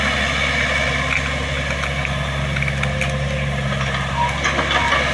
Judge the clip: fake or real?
real